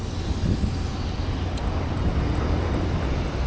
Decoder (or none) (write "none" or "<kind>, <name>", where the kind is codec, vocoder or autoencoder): none